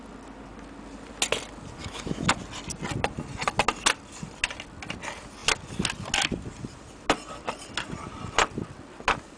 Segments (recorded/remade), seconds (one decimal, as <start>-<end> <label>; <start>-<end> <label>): 0.0-1.8 recorded; 1.8-2.3 remade; 2.3-9.4 recorded